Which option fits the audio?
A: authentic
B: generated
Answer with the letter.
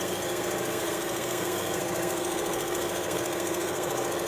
B